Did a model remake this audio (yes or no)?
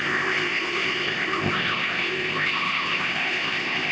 yes